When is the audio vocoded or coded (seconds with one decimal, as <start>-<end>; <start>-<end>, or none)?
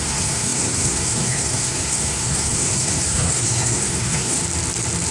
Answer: 0.0-4.4